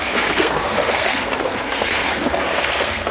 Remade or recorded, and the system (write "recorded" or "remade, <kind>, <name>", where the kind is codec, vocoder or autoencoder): remade, codec, SNAC